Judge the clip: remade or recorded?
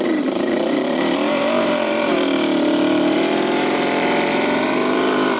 remade